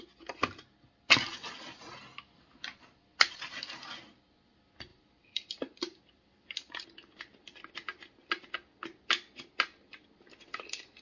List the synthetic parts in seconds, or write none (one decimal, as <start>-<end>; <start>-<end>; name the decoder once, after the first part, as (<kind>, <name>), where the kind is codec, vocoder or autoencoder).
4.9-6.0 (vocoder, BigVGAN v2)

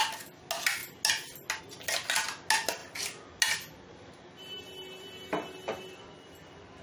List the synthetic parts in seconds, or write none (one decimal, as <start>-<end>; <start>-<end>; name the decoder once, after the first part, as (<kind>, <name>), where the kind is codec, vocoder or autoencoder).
none

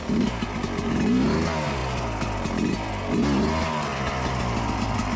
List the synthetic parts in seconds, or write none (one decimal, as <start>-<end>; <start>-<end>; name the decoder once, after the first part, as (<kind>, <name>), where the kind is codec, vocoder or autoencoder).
none

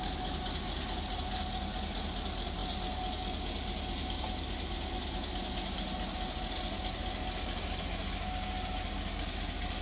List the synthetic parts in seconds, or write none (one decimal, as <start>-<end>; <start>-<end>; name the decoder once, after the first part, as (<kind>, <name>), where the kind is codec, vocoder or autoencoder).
none

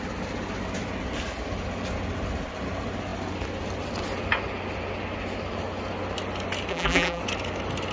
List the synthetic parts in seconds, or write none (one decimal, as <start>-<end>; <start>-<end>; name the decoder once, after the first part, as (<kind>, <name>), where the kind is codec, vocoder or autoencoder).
6.7-7.2 (vocoder, BigVGAN v2)